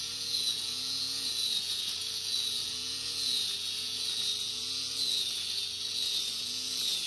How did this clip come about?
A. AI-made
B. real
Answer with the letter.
A